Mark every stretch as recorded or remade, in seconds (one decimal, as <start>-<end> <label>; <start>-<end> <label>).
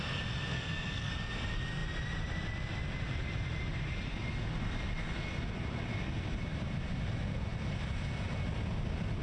0.0-0.5 recorded; 0.5-1.1 remade; 1.1-9.2 recorded